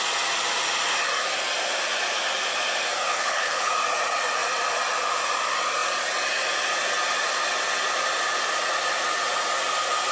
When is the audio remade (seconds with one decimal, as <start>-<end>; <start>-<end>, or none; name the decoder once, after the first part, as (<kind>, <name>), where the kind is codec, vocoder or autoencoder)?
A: 3.1-3.7 (codec, HILCodec)